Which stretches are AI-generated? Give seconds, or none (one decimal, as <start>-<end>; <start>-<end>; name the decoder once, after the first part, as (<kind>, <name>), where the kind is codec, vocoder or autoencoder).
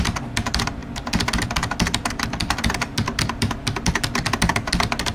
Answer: none